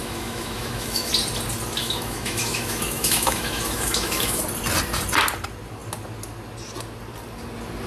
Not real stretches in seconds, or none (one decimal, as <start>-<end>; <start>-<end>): 0.0-1.1; 1.8-4.4